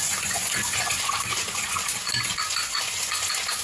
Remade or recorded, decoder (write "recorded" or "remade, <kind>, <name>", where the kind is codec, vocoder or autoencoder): remade, vocoder, Vocos